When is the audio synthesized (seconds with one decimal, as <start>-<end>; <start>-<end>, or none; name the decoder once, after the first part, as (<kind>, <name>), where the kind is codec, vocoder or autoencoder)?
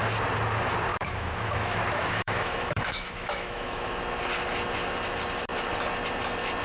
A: 0.9-4.0 (autoencoder, DAC-VAE)